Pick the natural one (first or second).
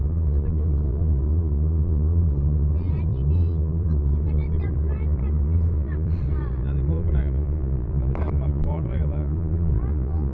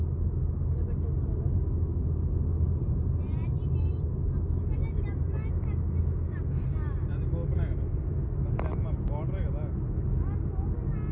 second